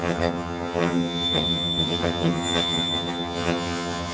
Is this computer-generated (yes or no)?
yes